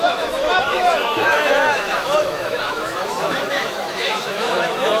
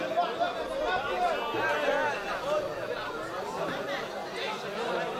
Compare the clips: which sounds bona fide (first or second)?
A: second